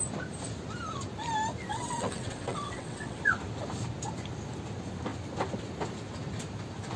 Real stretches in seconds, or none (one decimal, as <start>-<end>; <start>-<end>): 0.0-1.7; 3.2-7.0